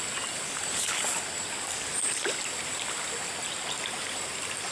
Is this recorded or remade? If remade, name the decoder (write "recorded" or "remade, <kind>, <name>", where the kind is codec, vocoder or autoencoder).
recorded